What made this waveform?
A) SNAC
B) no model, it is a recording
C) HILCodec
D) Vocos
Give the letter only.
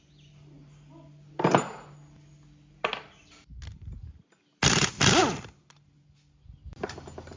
B